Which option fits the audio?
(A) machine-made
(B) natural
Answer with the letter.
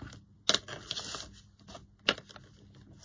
B